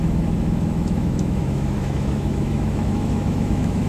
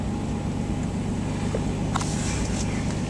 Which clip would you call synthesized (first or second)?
first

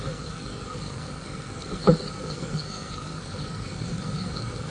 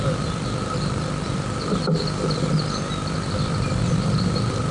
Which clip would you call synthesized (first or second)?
first